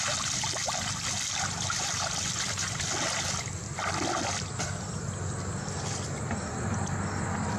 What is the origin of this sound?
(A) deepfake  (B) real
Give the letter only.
B